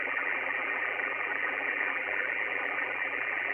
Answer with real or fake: fake